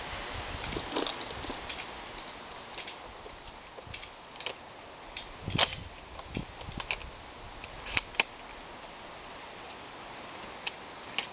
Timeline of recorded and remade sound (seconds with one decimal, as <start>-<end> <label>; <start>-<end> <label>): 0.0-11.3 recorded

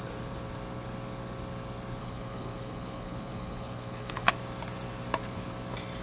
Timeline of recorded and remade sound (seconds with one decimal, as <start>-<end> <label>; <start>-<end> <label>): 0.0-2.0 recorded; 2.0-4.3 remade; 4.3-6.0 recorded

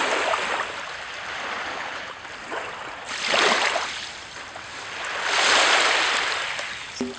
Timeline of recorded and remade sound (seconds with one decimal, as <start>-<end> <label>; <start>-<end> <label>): 0.0-1.7 recorded; 1.7-2.2 remade; 2.2-7.2 recorded

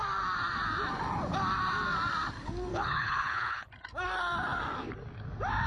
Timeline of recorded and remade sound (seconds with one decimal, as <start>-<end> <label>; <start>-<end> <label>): 0.0-2.7 recorded; 2.7-3.7 remade; 3.7-5.7 recorded

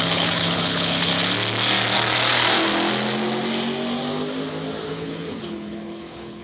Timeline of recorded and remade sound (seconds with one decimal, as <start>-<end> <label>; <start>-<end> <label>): 0.0-1.1 remade; 1.1-4.9 recorded; 4.9-6.4 remade

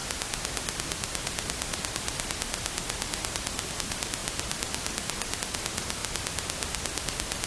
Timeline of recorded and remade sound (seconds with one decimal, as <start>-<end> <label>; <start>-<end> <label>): 0.0-7.5 recorded